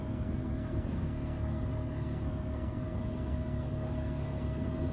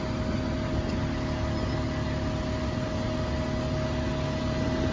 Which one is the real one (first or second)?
second